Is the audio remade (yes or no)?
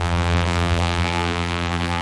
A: yes